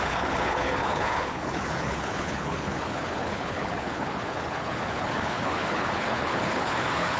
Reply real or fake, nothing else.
fake